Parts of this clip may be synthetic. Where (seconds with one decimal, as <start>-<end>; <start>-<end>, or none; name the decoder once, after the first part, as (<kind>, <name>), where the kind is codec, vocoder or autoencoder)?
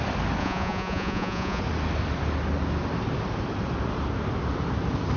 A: 0.4-1.6 (vocoder, Vocos)